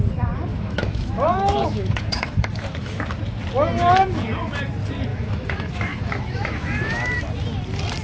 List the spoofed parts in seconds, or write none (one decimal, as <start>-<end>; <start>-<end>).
0.5-3.0; 5.1-7.2